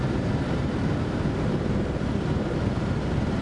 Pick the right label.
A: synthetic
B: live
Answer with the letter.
A